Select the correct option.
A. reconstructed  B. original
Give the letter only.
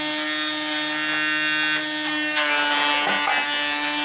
B